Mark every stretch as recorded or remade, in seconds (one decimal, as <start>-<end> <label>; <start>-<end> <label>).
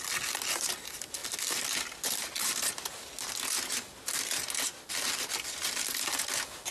0.0-6.7 recorded